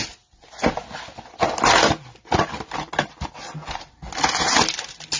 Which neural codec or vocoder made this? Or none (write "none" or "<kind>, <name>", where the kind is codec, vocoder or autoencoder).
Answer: none